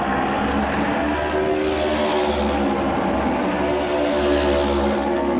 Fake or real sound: real